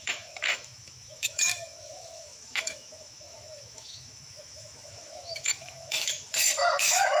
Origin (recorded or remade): remade